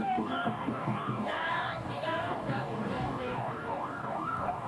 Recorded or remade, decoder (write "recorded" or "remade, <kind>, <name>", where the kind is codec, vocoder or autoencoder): remade, codec, DAC